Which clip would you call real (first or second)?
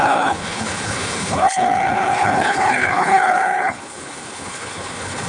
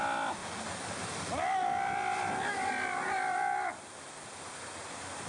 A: second